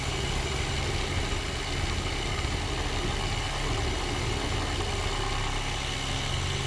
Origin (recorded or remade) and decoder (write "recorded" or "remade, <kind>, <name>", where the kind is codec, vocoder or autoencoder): recorded